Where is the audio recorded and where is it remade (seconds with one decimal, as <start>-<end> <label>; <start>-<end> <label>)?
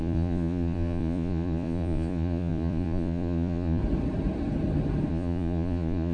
0.0-3.8 remade; 3.8-5.1 recorded; 5.1-6.1 remade